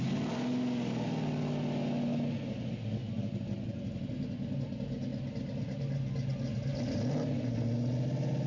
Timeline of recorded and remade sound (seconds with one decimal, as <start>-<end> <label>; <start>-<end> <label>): 0.0-8.5 recorded